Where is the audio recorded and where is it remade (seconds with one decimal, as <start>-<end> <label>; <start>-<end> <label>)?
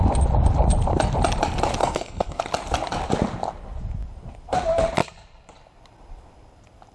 0.0-1.8 recorded; 1.8-2.4 remade; 2.4-6.9 recorded